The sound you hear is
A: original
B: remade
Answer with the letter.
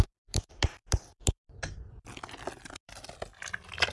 B